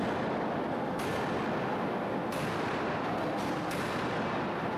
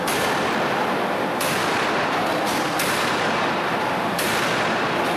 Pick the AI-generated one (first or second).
second